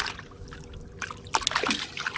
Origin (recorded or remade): recorded